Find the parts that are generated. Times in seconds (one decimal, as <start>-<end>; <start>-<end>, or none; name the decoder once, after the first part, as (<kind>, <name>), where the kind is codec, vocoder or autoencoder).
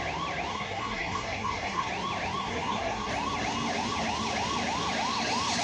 0.5-1.9 (codec, SNAC); 2.4-3.1